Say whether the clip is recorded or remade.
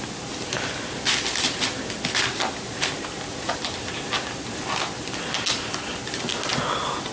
recorded